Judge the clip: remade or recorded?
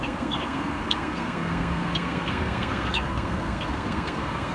remade